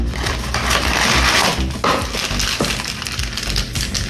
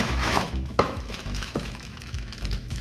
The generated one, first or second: second